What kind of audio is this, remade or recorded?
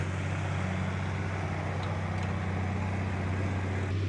recorded